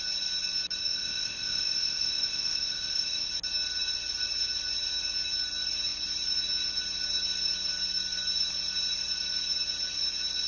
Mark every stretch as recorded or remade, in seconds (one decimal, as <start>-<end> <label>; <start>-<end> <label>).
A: 0.0-0.8 recorded; 0.8-3.3 remade; 3.3-10.5 recorded